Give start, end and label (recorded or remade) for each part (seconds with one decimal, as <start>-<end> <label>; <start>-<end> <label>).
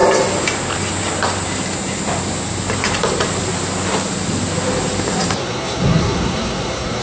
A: 0.0-5.4 recorded; 5.4-7.0 remade